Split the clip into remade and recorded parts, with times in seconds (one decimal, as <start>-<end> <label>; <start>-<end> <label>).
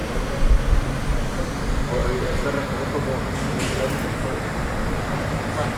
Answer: 0.0-5.8 recorded